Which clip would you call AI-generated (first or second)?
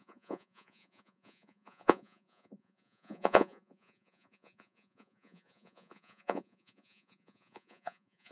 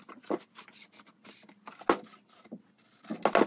first